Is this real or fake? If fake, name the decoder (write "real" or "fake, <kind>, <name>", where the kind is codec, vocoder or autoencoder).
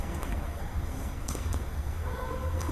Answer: fake, codec, SNAC